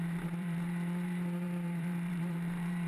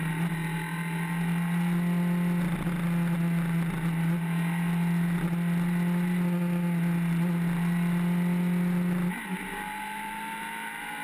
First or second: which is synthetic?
first